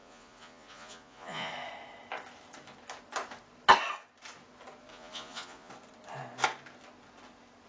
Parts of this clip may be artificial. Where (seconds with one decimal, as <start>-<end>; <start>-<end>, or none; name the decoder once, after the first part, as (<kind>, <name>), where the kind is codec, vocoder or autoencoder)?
0.0-1.5 (vocoder, Vocos); 4.9-5.7